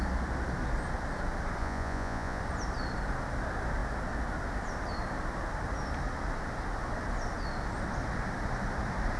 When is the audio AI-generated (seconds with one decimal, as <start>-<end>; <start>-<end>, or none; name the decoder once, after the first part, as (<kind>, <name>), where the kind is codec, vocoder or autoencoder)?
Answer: 1.6-2.4 (vocoder, Vocos)